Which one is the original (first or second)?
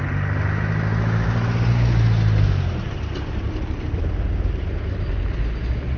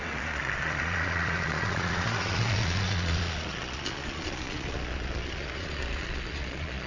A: first